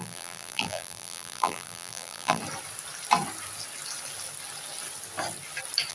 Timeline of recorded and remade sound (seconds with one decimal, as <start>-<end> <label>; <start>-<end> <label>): 0.0-2.4 remade; 2.4-5.9 recorded

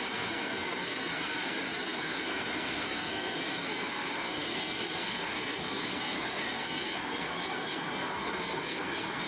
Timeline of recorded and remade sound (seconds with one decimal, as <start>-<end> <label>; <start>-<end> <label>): 0.0-9.3 remade

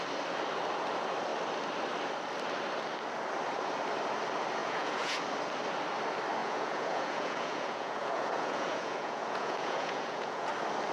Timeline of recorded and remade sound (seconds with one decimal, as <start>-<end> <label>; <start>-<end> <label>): 0.0-4.6 recorded; 4.6-5.2 remade; 5.2-6.4 recorded; 6.4-10.5 remade; 10.5-10.9 recorded

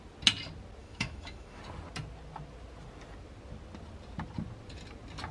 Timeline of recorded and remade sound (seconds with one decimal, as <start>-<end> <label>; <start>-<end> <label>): 0.0-0.8 recorded; 0.8-1.6 remade; 1.6-5.3 recorded